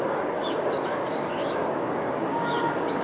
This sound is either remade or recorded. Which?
remade